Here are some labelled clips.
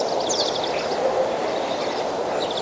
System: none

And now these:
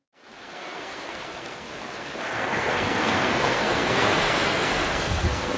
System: codec, SNAC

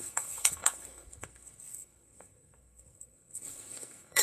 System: codec, SNAC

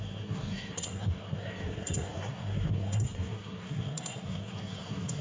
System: codec, SNAC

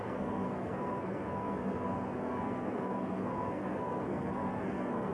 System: codec, SNAC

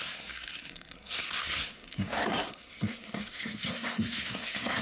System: codec, SNAC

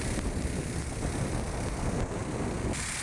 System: none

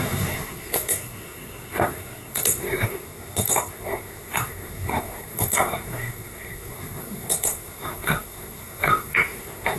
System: codec, SNAC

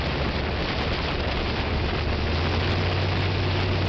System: none